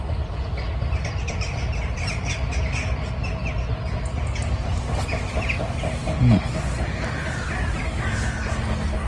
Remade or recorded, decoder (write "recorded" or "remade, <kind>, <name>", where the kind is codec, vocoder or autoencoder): recorded